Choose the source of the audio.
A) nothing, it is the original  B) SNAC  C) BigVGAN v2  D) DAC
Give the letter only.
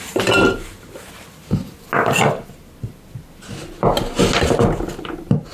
A